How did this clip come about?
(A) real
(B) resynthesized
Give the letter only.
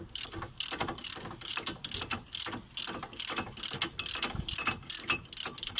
A